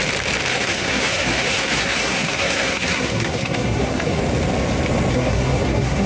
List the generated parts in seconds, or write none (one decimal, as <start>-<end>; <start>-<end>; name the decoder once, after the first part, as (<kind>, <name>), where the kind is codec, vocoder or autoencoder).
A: 0.5-4.2 (codec, SNAC); 5.1-6.1

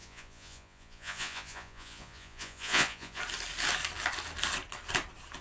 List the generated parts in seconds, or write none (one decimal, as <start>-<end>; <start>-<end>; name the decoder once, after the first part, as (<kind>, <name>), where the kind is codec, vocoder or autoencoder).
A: 0.0-3.2 (vocoder, Vocos)